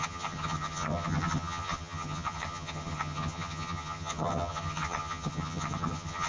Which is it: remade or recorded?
remade